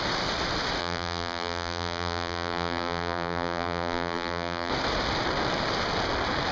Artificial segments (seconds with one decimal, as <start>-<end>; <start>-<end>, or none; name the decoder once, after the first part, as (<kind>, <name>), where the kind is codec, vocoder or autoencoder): 0.8-4.7 (vocoder, BigVGAN v2)